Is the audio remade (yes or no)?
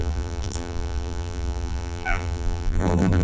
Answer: yes